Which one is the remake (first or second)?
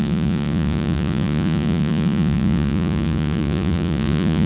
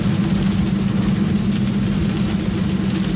first